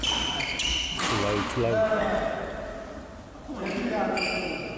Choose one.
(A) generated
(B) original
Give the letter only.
B